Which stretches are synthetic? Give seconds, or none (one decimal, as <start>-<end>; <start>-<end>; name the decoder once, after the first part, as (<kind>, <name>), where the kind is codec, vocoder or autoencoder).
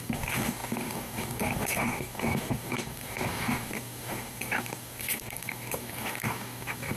0.0-7.0 (codec, DAC)